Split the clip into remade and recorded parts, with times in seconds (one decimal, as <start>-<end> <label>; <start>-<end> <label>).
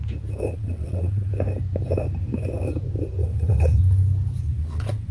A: 0.0-0.5 recorded; 0.5-1.3 remade; 1.3-3.2 recorded; 3.2-3.8 remade; 3.8-4.4 recorded; 4.4-5.1 remade